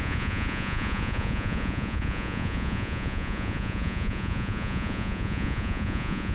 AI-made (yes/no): yes